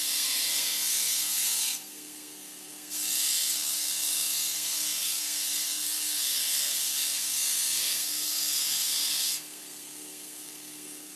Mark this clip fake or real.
fake